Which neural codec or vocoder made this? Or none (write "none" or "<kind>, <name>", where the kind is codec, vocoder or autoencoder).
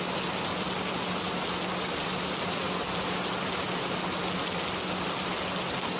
none